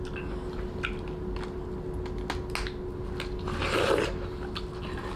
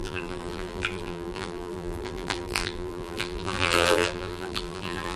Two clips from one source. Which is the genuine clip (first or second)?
first